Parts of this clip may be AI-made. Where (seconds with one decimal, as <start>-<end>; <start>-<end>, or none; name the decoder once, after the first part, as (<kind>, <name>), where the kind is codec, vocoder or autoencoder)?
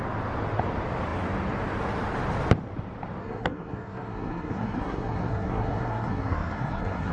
3.2-7.1 (codec, SNAC)